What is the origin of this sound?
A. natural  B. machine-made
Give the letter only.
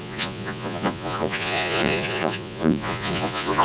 B